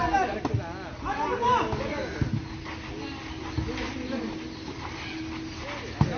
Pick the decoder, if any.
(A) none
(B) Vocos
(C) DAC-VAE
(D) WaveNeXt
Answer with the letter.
A